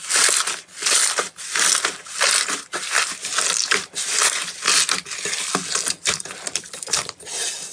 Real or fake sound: real